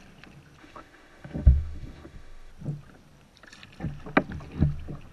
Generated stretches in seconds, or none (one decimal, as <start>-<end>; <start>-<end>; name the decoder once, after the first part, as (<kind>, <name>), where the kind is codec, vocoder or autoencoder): 0.6-2.5 (autoencoder, DAC-VAE)